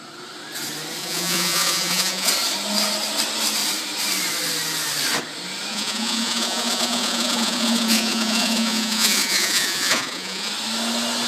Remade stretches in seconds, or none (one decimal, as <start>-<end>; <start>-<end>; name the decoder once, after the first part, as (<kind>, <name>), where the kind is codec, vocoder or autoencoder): 1.0-2.3 (vocoder, Vocos); 5.7-10.5